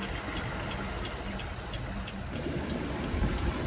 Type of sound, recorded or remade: recorded